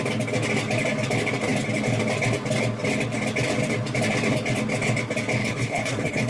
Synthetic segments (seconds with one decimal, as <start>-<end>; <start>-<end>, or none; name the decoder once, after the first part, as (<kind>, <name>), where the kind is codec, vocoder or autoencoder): 5.4-6.3 (codec, HILCodec)